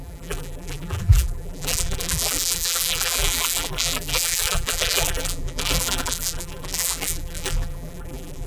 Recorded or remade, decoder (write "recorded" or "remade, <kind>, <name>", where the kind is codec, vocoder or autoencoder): remade, vocoder, BigVGAN v2